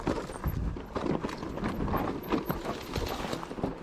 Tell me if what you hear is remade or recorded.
recorded